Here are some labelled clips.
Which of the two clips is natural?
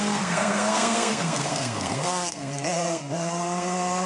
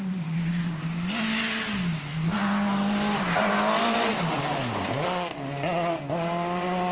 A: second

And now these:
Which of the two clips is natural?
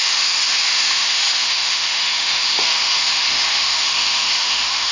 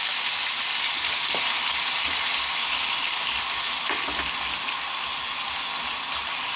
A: second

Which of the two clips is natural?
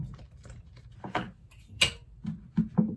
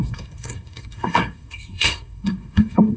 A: first